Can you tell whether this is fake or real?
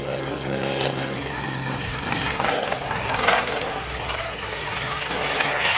fake